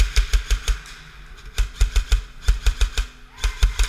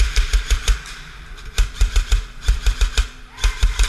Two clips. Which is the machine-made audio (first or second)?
second